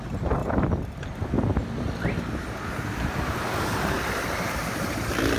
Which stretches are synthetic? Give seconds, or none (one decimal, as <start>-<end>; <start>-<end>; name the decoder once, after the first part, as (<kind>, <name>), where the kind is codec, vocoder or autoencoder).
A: 0.0-0.4 (vocoder, BigVGAN v2); 3.6-5.4